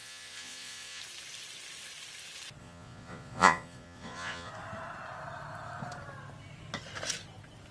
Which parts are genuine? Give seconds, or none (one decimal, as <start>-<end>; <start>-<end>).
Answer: 1.0-2.6; 4.5-7.7